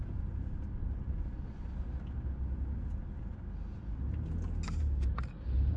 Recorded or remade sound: recorded